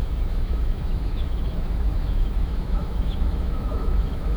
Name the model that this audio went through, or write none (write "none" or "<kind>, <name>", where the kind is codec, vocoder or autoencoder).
autoencoder, DAC-VAE